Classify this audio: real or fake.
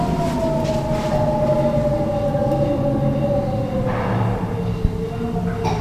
real